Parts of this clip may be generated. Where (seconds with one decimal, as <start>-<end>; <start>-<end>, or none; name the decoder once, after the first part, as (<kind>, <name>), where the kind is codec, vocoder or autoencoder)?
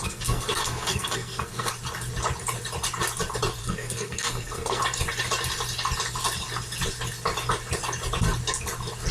0.0-1.7 (codec, SNAC); 3.6-4.8